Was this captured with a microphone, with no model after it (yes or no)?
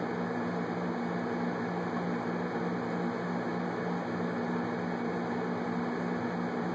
yes